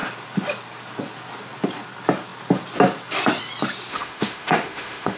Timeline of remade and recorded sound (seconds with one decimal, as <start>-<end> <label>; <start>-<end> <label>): 0.0-3.9 recorded; 3.9-5.2 remade